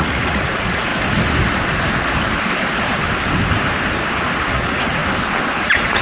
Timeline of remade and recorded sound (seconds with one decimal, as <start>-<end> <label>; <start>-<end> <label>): 0.0-0.9 remade; 0.9-4.5 recorded; 4.5-5.0 remade; 5.0-5.6 recorded; 5.6-6.0 remade

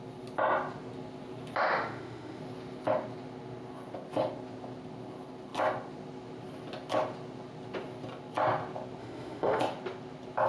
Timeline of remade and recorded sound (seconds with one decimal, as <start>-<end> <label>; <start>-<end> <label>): 0.0-1.6 recorded; 1.6-2.4 remade; 2.4-9.0 recorded; 9.0-9.6 remade; 9.6-10.5 recorded

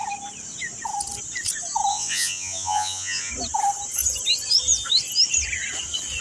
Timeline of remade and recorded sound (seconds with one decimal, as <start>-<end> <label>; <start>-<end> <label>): 0.0-1.9 recorded; 1.9-3.3 remade; 3.3-6.2 recorded

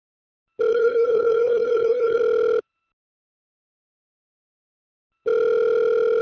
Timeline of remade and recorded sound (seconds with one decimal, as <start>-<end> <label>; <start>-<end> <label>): 0.0-0.7 recorded; 0.7-2.2 remade; 2.2-6.2 recorded

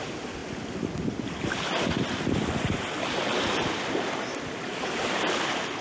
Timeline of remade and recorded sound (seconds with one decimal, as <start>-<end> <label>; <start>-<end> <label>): 0.0-5.8 recorded

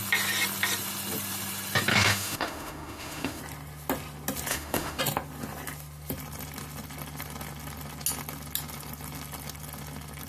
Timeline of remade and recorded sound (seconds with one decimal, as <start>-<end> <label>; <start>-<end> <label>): 0.0-1.9 recorded; 1.9-3.4 remade; 3.4-4.5 recorded; 4.5-5.0 remade; 5.0-10.3 recorded